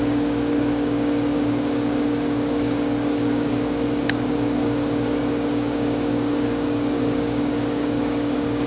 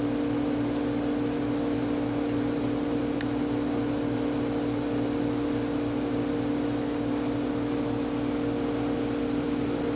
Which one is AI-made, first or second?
first